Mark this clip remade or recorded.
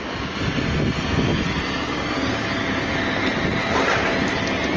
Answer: recorded